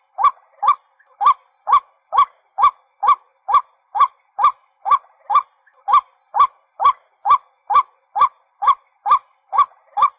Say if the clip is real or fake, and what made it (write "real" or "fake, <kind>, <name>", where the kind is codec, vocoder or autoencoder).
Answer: real